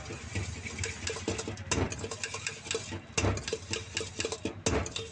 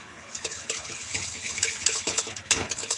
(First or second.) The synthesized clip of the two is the second